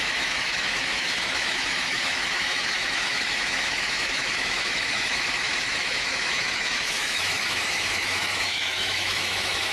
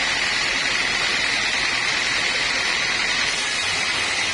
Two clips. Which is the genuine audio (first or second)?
second